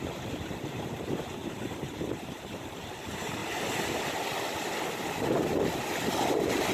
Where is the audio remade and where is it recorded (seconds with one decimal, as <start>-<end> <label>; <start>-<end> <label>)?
0.0-3.4 remade; 3.4-6.7 recorded